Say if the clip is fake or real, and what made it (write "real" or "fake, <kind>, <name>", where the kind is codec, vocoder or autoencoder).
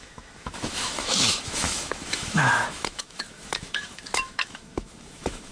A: fake, autoencoder, DAC-VAE